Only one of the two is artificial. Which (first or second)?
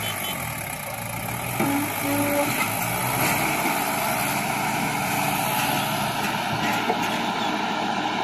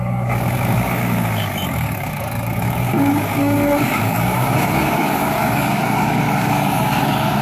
second